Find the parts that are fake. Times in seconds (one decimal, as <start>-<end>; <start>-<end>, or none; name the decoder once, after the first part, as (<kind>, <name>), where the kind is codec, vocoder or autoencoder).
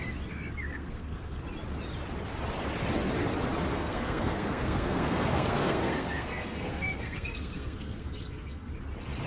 0.7-1.4 (codec, SNAC); 3.7-8.7